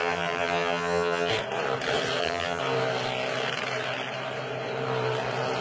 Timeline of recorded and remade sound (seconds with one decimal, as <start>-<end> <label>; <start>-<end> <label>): 0.0-1.3 remade; 1.3-2.2 recorded; 2.2-2.6 remade; 2.6-5.6 recorded